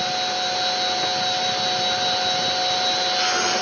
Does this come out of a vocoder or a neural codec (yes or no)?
no